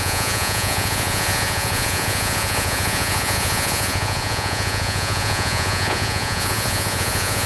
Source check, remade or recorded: remade